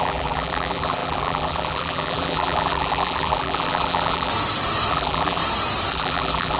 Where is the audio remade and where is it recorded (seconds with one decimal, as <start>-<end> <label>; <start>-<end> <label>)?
0.0-4.3 remade; 4.3-4.9 recorded; 4.9-5.4 remade; 5.4-5.9 recorded; 5.9-6.6 remade